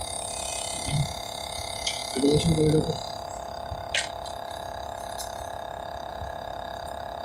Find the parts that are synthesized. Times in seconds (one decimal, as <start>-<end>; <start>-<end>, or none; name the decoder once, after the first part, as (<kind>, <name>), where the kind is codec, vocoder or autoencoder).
0.0-2.0 (vocoder, Vocos); 6.1-6.5